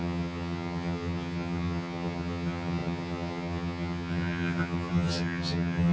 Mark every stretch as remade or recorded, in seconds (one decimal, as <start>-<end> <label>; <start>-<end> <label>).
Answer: 0.0-5.9 remade